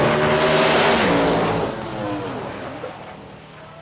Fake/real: real